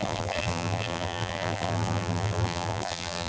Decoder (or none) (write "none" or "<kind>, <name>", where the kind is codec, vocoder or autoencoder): vocoder, BigVGAN v2